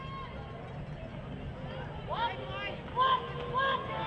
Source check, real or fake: real